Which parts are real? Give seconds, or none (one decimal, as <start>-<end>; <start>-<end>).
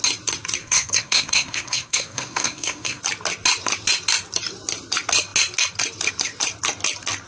0.0-0.6; 3.0-7.3